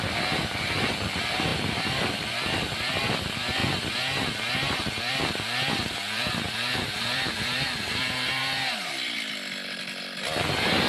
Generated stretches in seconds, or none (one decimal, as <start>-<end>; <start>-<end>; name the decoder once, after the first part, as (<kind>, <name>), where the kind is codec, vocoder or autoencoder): 0.0-3.6 (vocoder, BigVGAN v2); 5.1-8.4